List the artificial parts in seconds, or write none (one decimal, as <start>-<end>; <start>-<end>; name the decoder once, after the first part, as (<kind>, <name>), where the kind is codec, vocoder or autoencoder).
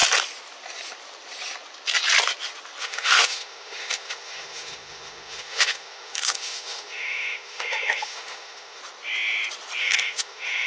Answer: 2.8-8.8 (autoencoder, DAC-VAE); 9.8-10.7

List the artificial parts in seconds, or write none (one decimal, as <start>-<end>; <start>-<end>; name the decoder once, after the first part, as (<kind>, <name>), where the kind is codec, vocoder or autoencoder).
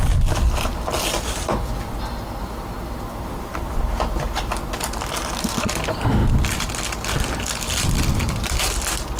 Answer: none